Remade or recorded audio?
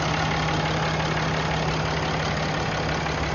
recorded